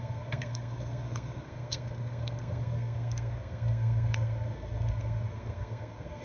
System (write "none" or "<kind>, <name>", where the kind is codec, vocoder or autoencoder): codec, SNAC